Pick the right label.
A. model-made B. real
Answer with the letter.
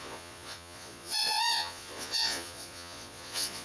A